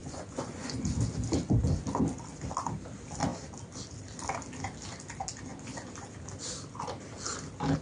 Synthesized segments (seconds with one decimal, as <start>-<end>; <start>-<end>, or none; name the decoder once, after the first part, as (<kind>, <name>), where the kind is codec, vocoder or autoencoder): 0.0-0.8 (vocoder, Vocos)